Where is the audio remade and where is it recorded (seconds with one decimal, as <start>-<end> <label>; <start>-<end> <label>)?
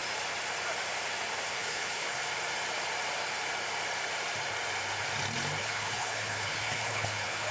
0.0-1.5 recorded; 1.5-2.2 remade; 2.2-5.6 recorded; 5.6-7.5 remade